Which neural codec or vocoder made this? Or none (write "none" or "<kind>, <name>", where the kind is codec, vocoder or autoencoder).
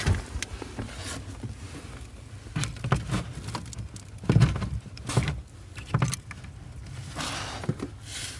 none